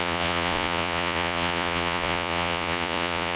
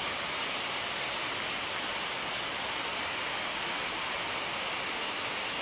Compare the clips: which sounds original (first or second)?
second